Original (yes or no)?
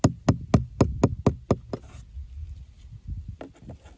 yes